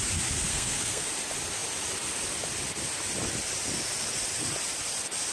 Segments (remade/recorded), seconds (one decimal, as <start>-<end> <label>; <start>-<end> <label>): 0.0-0.5 recorded; 0.5-1.1 remade; 1.1-5.3 recorded